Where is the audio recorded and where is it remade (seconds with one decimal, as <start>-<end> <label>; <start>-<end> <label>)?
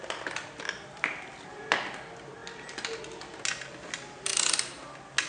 0.0-5.3 recorded